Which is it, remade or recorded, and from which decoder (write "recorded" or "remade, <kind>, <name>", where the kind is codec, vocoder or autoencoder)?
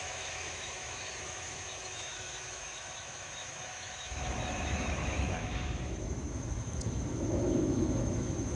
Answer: remade, autoencoder, DAC-VAE